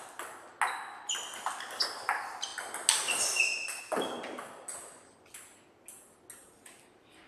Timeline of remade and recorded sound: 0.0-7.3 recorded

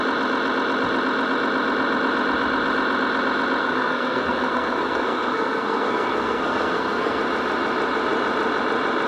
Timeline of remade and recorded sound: 0.0-3.6 recorded; 3.6-7.2 remade; 7.2-9.1 recorded

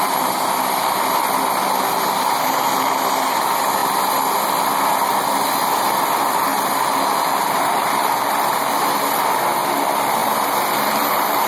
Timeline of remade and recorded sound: 0.0-6.5 recorded; 6.5-8.7 remade; 8.7-10.2 recorded; 10.2-11.5 remade

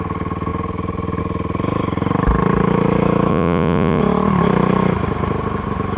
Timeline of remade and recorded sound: 0.0-3.3 recorded; 3.3-4.0 remade; 4.0-6.0 recorded